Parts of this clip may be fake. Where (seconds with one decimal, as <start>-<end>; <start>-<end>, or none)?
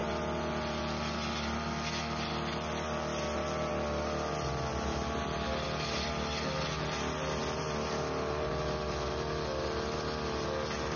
none